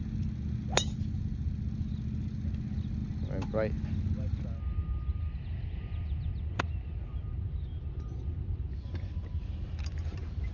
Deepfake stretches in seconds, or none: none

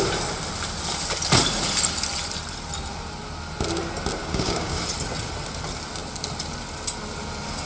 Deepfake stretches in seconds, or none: 4.2-4.8 (codec, DAC)

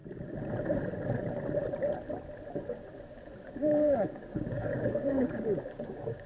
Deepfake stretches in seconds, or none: 3.5-6.3 (codec, DAC)